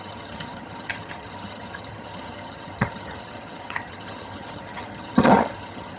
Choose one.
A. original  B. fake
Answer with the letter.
B